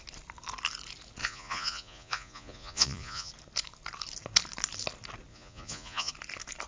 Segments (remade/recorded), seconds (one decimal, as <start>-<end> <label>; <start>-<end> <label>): 0.0-1.2 recorded; 1.2-3.3 remade; 3.3-5.3 recorded; 5.3-6.1 remade; 6.1-6.7 recorded